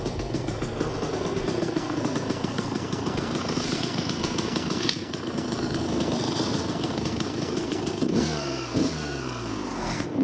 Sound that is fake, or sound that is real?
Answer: fake